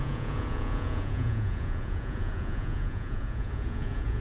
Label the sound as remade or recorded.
remade